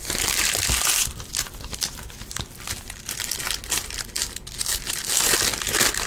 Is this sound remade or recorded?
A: recorded